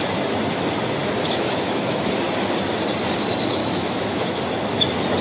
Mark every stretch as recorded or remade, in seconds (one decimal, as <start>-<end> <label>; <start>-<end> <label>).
0.0-1.0 recorded; 1.0-2.1 remade; 2.1-3.6 recorded; 3.6-4.4 remade; 4.4-5.2 recorded